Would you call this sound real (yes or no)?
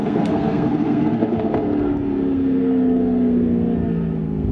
no